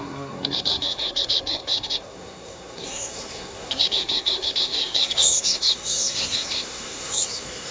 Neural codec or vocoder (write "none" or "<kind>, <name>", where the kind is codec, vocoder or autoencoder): codec, SNAC